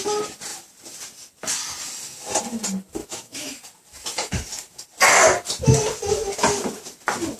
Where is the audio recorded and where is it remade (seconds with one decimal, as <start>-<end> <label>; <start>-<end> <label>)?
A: 0.0-3.0 recorded; 3.0-3.5 remade; 3.5-7.4 recorded